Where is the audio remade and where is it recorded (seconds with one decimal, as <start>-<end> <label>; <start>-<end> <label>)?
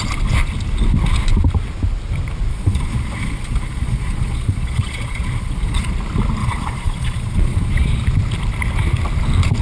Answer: 0.0-2.5 recorded; 2.5-5.9 remade; 5.9-6.4 recorded; 6.4-7.7 remade; 7.7-9.6 recorded